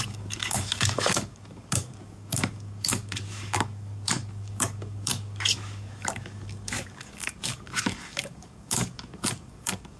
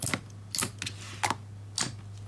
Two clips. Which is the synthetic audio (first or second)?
first